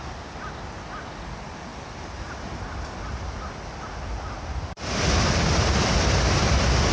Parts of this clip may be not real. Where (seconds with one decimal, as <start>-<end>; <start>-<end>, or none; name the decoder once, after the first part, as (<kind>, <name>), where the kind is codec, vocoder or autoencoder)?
none

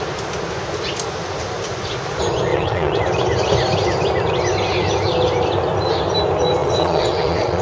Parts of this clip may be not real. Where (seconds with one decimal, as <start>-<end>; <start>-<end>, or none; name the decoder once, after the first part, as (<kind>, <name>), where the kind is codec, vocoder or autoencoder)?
2.5-3.0 (vocoder, WaveNeXt); 6.6-7.6

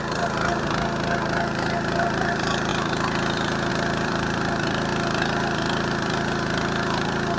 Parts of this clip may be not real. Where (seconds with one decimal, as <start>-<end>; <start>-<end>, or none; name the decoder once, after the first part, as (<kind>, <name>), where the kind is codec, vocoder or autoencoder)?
0.0-7.4 (vocoder, BigVGAN v2)

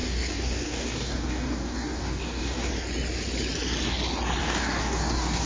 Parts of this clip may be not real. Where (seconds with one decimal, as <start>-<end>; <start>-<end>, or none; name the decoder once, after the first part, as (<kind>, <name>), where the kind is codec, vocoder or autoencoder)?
0.0-2.7 (codec, DAC); 4.4-5.5

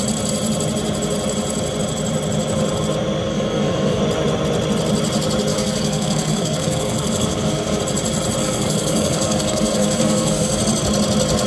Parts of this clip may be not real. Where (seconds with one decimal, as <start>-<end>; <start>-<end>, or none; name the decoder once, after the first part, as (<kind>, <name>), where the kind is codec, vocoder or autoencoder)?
3.3-4.0 (codec, SNAC); 5.5-7.8; 8.4-10.6

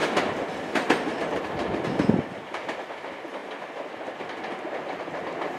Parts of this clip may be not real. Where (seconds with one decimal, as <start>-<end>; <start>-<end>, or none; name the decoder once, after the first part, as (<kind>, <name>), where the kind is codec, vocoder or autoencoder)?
none

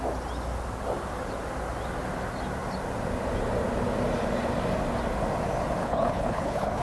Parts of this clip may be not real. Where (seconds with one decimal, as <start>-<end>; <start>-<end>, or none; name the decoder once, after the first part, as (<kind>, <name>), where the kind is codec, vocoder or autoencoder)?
5.8-6.8 (codec, HILCodec)

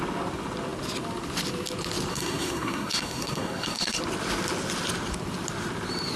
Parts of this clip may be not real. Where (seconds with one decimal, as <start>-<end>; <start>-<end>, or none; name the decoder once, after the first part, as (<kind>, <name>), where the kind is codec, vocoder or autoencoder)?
2.1-4.0 (codec, SNAC)